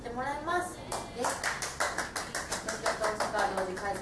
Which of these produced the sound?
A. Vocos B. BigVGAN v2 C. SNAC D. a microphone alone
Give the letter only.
D